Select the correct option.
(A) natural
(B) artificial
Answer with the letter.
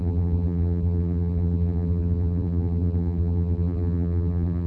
B